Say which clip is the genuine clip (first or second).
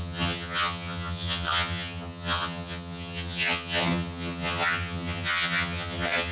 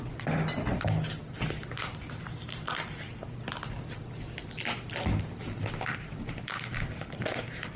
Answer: second